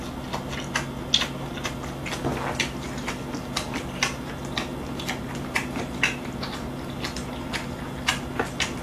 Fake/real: real